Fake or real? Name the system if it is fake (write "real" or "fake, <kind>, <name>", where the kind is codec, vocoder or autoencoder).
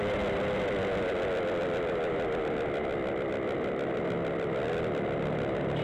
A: real